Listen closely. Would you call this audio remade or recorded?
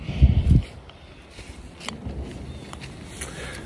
recorded